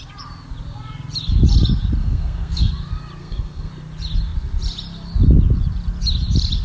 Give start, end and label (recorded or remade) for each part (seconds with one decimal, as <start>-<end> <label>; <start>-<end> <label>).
0.0-2.0 recorded; 2.0-2.7 remade; 2.7-3.2 recorded; 3.2-3.7 remade; 3.7-6.6 recorded